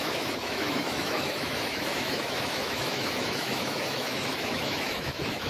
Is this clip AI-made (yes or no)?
yes